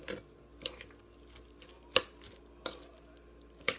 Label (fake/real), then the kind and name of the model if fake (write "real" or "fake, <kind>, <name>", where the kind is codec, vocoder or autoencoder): real